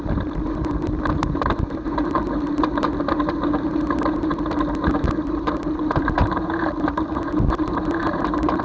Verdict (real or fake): fake